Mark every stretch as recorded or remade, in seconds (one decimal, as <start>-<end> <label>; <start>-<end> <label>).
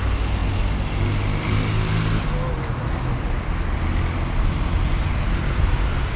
0.0-6.2 recorded